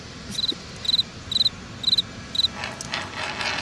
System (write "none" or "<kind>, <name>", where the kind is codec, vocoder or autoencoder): none